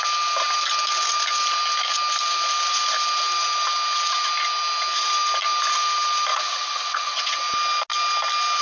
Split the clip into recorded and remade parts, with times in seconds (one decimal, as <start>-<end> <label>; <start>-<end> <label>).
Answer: 0.0-6.3 recorded; 6.3-7.4 remade; 7.4-8.6 recorded